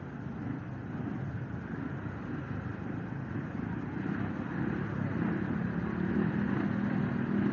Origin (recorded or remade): recorded